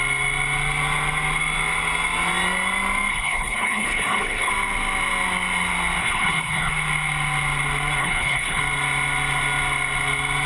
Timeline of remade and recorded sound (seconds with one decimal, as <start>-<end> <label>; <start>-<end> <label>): 0.0-3.1 recorded; 3.1-4.5 remade; 4.5-6.0 recorded; 6.0-6.7 remade; 6.7-8.0 recorded; 8.0-8.6 remade; 8.6-10.5 recorded